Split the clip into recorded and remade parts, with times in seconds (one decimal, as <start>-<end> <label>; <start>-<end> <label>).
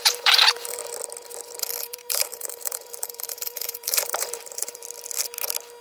0.0-0.8 remade; 0.8-1.9 recorded; 1.9-4.8 remade; 4.8-5.8 recorded